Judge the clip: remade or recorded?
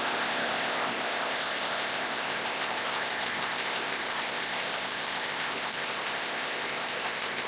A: remade